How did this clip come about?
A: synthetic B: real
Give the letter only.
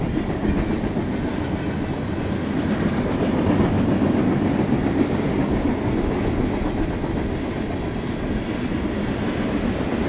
B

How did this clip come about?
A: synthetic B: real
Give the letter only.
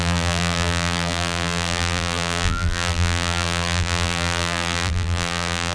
A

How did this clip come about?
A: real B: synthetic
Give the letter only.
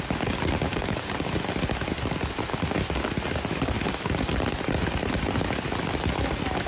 A